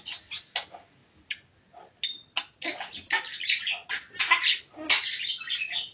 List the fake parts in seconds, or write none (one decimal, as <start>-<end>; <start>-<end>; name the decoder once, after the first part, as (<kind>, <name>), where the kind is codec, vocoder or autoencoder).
none